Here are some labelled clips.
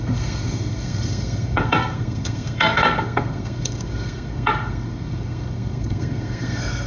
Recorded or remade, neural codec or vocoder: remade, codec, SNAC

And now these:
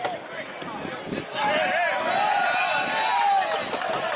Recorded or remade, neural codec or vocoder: recorded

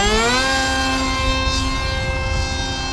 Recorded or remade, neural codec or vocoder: recorded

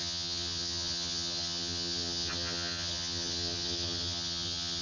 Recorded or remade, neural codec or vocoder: remade, vocoder, HiFi-GAN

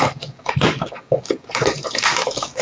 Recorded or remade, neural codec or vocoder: remade, codec, DAC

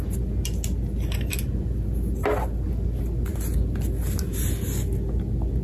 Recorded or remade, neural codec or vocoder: recorded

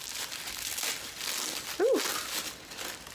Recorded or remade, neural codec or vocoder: recorded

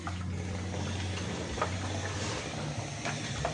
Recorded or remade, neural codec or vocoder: recorded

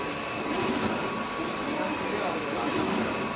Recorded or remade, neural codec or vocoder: recorded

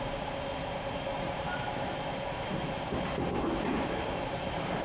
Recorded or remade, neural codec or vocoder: remade, vocoder, BigVGAN v2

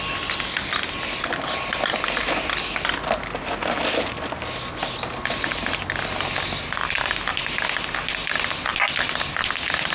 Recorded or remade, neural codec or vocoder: recorded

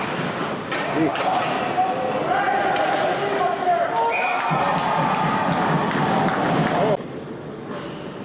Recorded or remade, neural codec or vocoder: recorded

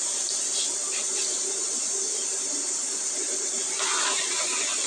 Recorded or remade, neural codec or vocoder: recorded